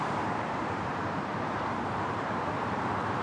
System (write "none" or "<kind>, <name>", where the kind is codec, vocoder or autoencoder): vocoder, BigVGAN v2